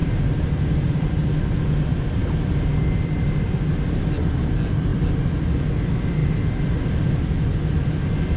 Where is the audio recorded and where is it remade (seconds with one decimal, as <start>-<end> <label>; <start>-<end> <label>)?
0.0-1.2 remade; 1.2-6.2 recorded; 6.2-8.0 remade; 8.0-8.4 recorded